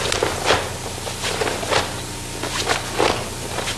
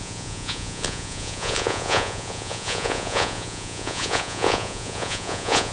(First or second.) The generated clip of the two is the second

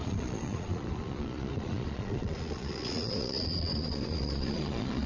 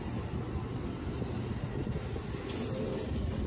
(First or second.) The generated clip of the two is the first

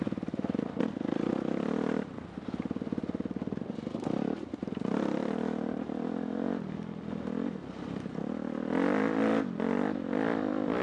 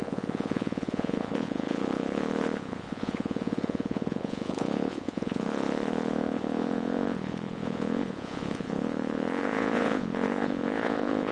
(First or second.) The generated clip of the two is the second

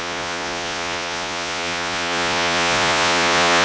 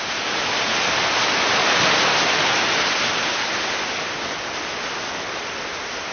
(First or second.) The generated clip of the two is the first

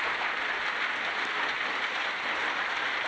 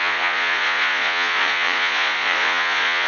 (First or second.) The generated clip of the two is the second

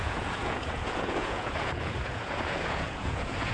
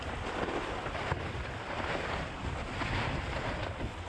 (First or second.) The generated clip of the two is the first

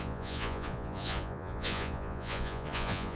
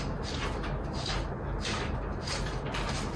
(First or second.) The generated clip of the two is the first